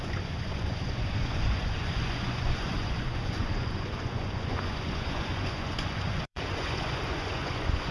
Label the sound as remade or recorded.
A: remade